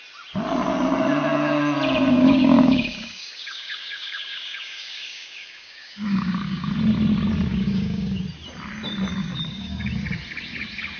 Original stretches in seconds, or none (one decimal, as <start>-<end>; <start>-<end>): 0.0-2.2; 6.7-7.5; 8.2-9.1; 9.9-11.0

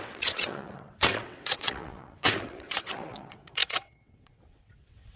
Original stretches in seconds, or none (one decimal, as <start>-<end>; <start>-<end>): none